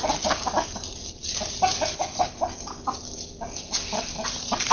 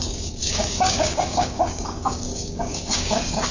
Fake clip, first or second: second